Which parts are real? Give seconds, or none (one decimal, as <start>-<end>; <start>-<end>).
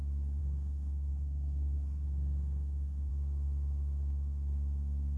0.0-0.4; 3.1-5.2